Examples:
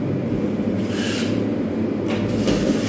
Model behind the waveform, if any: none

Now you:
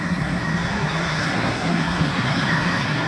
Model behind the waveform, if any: codec, SNAC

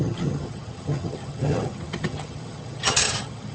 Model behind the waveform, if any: vocoder, HiFi-GAN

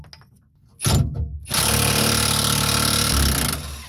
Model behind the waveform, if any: none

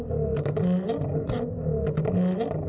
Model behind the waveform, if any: none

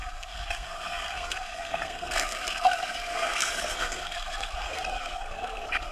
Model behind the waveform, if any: codec, SNAC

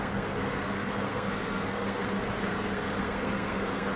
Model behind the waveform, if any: codec, SNAC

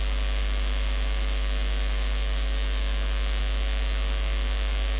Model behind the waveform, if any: autoencoder, DAC-VAE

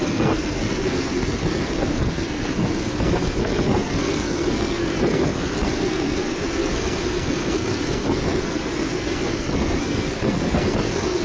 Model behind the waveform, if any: codec, SNAC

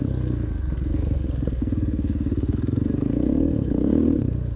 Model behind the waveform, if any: codec, SNAC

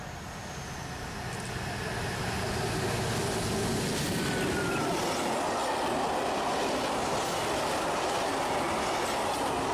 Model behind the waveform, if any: none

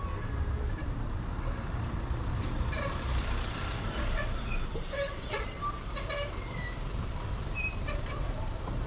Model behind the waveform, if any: vocoder, BigVGAN v2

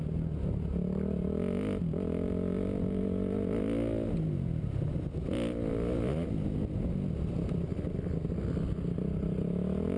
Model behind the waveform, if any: none